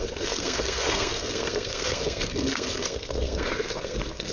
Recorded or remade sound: remade